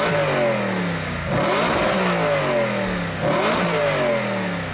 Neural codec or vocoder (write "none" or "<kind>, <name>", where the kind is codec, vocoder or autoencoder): none